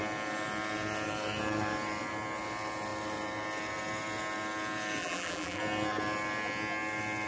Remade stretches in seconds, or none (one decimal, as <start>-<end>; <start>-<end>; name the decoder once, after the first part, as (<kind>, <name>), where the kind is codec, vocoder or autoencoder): 5.0-5.6 (vocoder, BigVGAN v2)